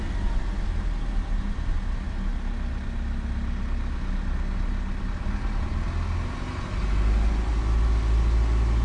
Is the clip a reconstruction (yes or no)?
no